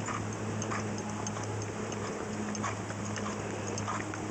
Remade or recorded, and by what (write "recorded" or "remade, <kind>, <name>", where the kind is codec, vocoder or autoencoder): recorded